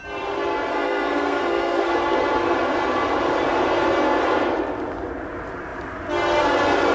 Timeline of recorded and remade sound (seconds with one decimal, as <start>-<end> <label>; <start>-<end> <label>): 0.0-0.7 recorded; 0.7-1.9 remade; 1.9-6.9 recorded